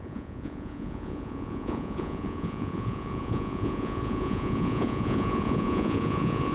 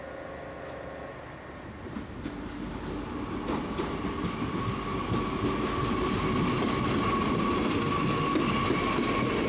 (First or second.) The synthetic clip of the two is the first